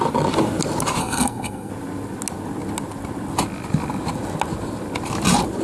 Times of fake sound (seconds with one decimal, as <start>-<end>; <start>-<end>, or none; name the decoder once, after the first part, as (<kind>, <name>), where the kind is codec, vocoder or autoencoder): 1.0-1.7 (codec, SNAC)